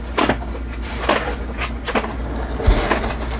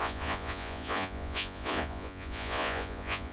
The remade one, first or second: second